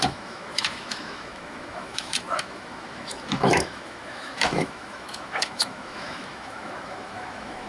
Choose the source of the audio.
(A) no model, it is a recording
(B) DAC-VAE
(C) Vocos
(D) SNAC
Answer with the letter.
B